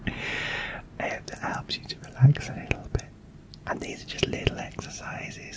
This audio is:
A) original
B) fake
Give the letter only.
A